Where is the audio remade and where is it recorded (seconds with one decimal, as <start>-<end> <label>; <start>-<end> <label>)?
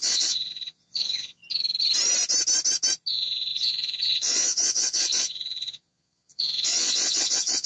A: 0.0-1.4 remade; 1.4-3.1 recorded; 3.1-7.7 remade